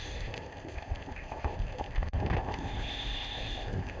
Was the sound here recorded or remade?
remade